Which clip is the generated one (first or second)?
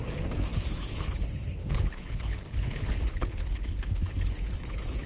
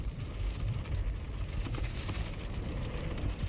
first